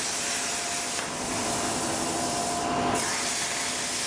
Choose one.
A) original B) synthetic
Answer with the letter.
A